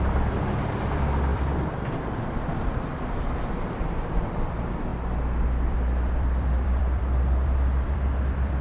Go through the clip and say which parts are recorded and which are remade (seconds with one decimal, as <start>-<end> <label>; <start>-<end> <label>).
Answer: 0.0-4.9 remade; 4.9-5.7 recorded; 5.7-8.6 remade